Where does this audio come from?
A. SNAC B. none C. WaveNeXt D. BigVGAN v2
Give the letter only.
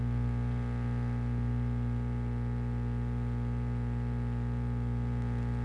B